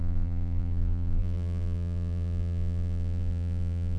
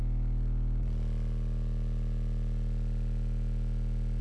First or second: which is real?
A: second